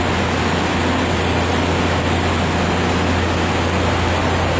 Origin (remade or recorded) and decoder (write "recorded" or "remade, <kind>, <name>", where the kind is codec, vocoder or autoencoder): recorded